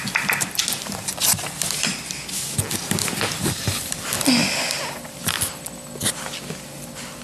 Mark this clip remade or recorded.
recorded